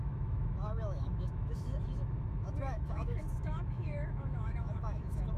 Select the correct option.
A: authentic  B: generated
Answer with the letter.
B